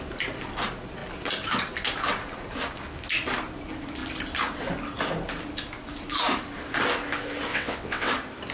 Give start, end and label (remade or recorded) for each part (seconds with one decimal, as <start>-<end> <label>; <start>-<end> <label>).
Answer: 0.0-7.5 recorded; 7.5-8.1 remade; 8.1-8.5 recorded